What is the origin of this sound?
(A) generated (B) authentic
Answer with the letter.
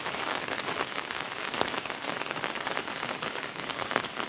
A